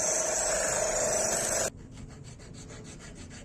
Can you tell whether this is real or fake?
real